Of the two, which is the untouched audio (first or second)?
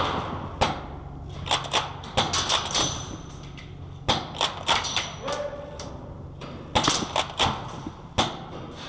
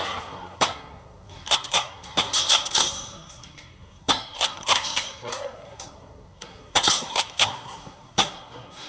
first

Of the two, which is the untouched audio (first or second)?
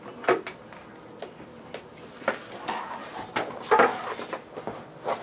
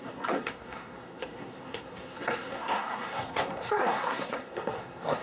first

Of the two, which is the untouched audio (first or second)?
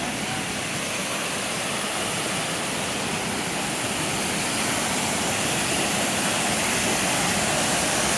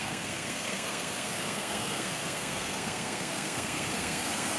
first